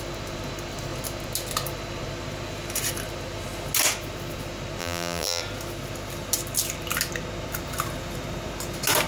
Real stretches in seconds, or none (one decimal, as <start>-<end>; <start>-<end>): 0.0-4.8; 5.4-9.1